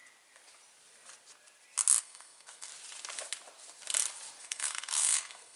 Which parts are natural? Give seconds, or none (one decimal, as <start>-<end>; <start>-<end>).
0.0-2.0; 2.7-4.4